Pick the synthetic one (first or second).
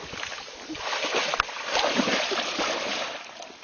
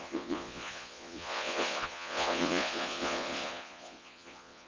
second